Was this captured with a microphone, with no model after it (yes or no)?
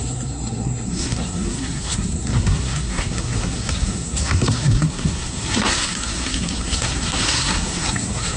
no